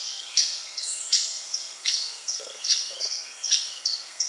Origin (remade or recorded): remade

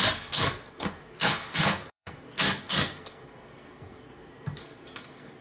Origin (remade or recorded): remade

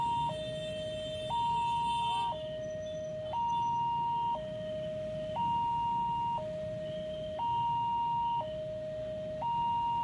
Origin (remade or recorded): recorded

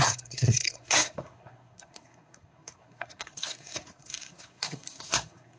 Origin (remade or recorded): remade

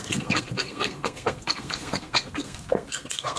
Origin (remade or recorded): remade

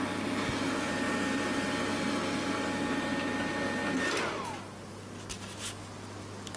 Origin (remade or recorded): recorded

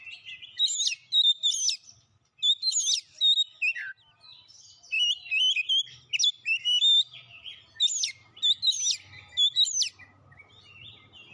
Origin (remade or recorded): recorded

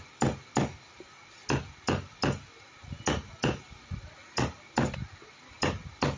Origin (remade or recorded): recorded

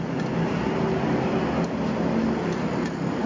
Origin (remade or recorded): recorded